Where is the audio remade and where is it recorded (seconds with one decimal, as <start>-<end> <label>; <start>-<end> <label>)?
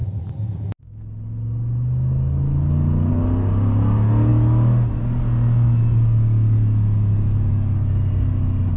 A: 0.0-8.8 recorded